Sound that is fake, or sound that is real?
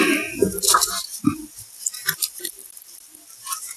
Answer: fake